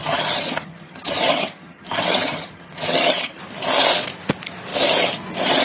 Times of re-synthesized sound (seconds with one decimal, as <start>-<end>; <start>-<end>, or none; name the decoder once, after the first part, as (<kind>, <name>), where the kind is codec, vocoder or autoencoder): 0.0-3.4 (vocoder, HiFi-GAN)